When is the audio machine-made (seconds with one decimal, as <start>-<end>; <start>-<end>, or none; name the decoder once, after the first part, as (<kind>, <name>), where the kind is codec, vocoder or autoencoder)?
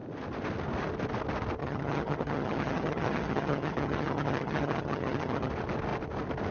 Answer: 1.6-5.5 (vocoder, HiFi-GAN)